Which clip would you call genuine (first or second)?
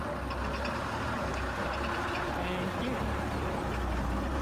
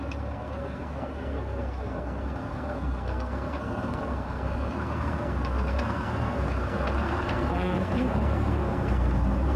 first